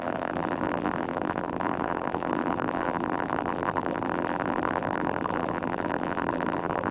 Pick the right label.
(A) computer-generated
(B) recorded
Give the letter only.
A